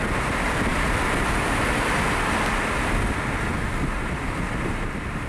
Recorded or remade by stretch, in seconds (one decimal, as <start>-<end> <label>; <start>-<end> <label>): 0.0-5.3 recorded